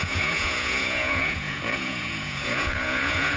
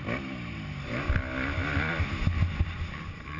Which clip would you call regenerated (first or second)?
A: first